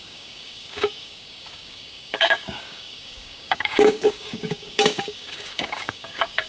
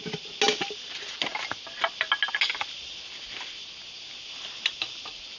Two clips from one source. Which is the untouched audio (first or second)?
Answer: second